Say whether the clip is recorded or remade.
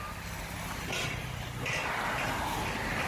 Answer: recorded